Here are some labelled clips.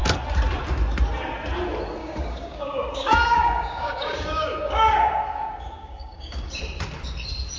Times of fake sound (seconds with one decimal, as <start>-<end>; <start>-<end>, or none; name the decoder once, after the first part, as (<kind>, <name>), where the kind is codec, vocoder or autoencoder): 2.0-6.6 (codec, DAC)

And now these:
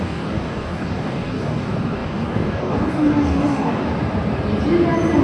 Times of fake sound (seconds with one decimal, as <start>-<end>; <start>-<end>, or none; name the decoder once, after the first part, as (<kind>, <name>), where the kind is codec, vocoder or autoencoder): 0.0-3.9 (codec, DAC)

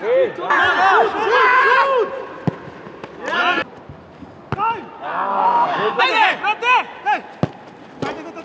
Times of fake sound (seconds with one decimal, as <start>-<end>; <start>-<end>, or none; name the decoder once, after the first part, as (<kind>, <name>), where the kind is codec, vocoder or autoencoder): 5.3-6.0 (codec, DAC)